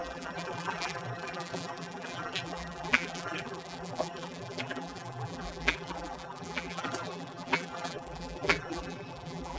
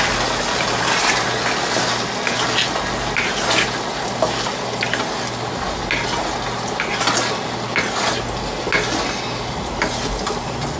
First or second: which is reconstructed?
first